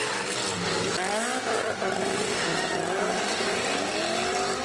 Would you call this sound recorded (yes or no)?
yes